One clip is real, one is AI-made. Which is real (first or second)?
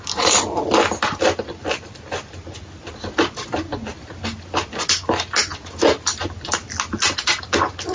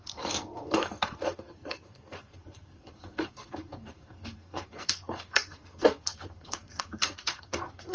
first